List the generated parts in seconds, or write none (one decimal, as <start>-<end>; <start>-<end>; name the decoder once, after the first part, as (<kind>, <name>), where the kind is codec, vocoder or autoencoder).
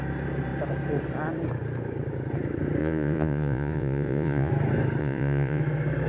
2.8-4.5 (vocoder, Vocos); 5.0-5.6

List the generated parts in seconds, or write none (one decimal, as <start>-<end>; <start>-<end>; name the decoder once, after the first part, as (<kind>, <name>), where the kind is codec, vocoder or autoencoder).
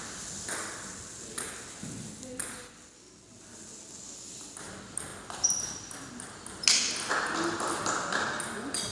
none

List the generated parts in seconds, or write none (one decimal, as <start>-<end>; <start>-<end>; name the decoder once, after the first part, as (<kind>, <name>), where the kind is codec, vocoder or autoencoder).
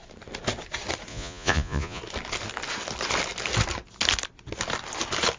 1.1-2.0 (vocoder, Vocos)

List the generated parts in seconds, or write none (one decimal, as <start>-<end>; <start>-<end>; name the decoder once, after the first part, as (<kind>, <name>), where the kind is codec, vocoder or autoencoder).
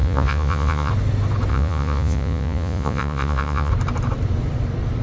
0.0-0.9 (vocoder, Vocos); 1.5-3.7